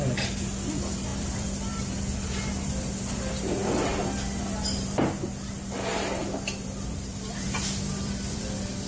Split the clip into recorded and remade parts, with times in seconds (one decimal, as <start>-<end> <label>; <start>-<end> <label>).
0.0-1.1 recorded; 1.1-1.9 remade; 1.9-5.9 recorded; 5.9-8.4 remade; 8.4-8.9 recorded